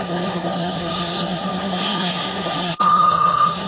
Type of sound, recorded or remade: remade